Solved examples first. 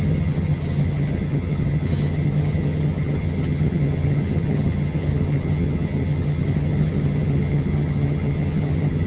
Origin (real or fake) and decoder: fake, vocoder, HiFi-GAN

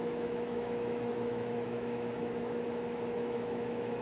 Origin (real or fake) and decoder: fake, autoencoder, DAC-VAE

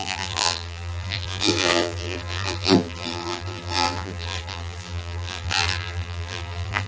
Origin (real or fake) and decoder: fake, vocoder, BigVGAN v2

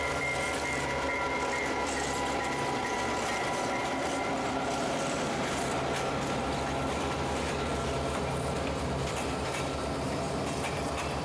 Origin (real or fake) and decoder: fake, vocoder, BigVGAN v2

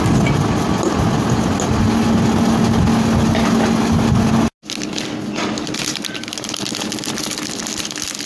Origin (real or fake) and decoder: real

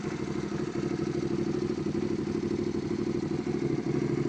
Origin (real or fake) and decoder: real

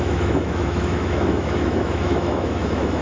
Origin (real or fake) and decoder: fake, autoencoder, DAC-VAE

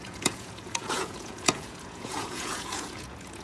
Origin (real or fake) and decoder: fake, vocoder, Vocos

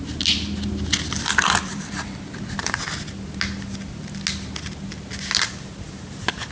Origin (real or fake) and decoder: real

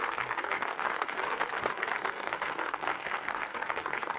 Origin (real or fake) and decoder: fake, codec, SNAC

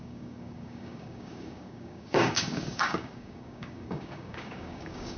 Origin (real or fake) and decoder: fake, codec, DAC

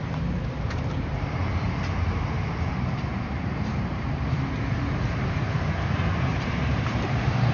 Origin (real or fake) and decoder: fake, vocoder, BigVGAN v2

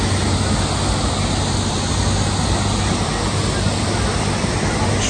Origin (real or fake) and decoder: real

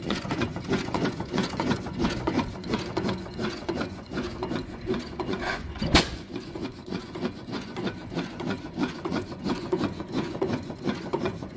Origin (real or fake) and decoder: fake, vocoder, Vocos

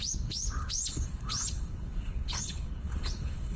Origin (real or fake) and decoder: fake, codec, HILCodec